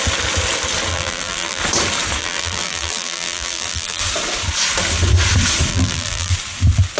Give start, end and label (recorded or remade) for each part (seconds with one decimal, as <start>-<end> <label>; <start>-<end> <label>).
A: 0.0-0.9 recorded; 0.9-1.6 remade; 1.6-2.2 recorded; 2.2-4.0 remade; 4.0-5.7 recorded; 5.7-6.3 remade; 6.3-7.0 recorded